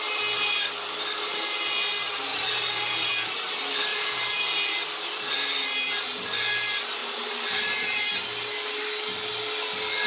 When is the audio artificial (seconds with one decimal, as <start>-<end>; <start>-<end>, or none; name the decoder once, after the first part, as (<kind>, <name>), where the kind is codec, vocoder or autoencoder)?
2.3-3.1 (vocoder, BigVGAN v2); 3.9-5.2; 7.0-8.1